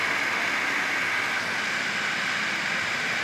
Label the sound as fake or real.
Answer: real